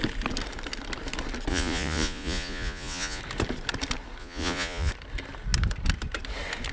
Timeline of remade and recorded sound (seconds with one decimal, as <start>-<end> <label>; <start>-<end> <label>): 0.0-1.5 recorded; 1.5-3.2 remade; 3.2-4.2 recorded; 4.2-4.9 remade; 4.9-6.7 recorded